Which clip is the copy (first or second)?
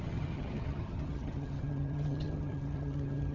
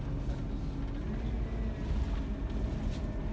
first